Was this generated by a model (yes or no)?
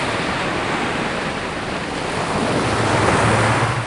no